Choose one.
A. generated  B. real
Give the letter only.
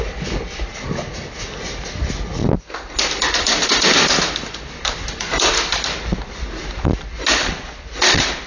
B